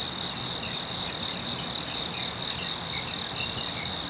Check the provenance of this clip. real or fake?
real